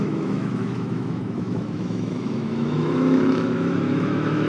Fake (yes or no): yes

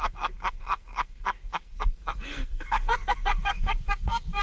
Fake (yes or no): yes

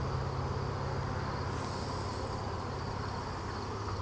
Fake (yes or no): no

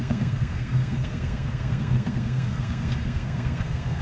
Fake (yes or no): yes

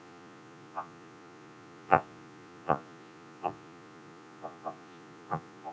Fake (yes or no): yes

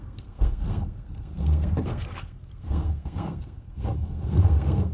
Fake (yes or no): yes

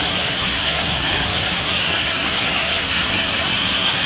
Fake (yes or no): yes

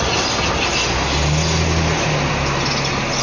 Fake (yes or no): no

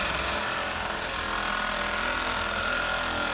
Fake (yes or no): no